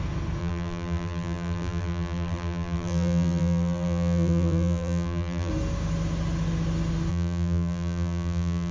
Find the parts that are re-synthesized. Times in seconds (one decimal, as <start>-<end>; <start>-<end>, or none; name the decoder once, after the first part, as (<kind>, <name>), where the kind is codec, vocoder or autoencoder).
0.4-5.5 (vocoder, BigVGAN v2); 7.1-8.7